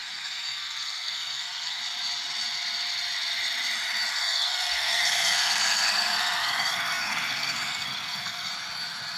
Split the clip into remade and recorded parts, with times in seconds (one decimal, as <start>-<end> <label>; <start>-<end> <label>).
0.0-1.8 remade; 1.8-4.1 recorded; 4.1-8.5 remade; 8.5-9.2 recorded